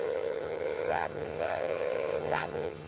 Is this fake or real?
fake